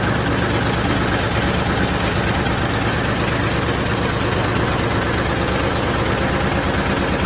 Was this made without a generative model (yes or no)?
yes